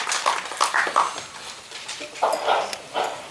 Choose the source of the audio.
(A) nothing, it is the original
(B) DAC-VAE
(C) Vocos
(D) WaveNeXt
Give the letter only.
A